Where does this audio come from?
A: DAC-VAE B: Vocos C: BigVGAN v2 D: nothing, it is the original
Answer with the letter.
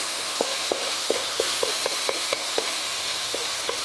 A